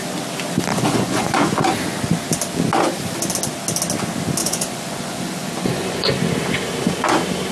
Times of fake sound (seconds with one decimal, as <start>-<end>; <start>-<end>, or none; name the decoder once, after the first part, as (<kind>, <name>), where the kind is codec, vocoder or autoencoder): 0.7-1.7 (vocoder, Vocos); 4.4-6.1